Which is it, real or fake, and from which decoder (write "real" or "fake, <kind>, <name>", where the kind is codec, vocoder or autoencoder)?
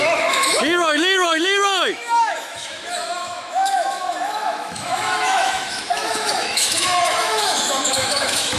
fake, autoencoder, DAC-VAE